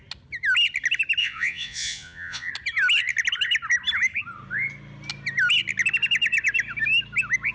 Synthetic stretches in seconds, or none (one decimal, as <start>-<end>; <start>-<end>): 1.2-2.5